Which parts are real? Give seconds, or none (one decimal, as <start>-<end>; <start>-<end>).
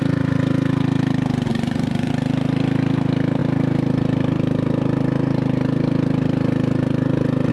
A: 0.0-1.5; 2.1-7.5